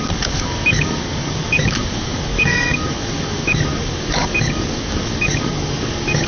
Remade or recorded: remade